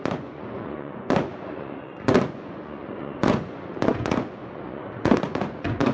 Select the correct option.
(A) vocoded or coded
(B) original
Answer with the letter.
A